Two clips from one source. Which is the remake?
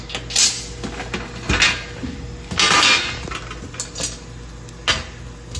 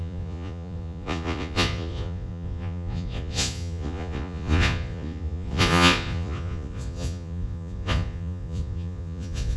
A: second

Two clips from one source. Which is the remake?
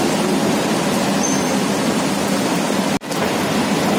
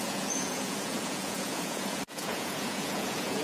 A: second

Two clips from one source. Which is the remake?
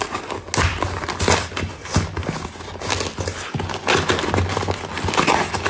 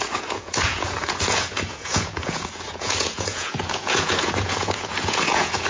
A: second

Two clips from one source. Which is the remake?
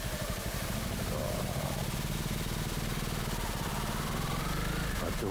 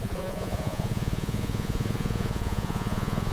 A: second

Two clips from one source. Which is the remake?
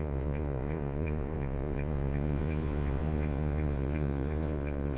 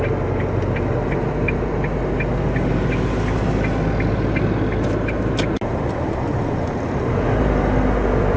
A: first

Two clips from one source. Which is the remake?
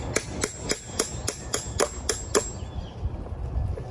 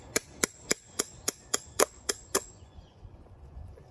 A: second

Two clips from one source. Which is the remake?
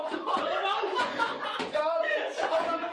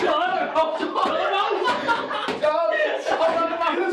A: first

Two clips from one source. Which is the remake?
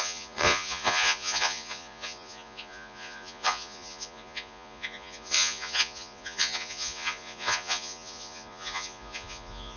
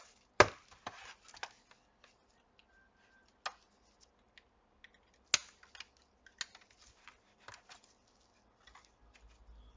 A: first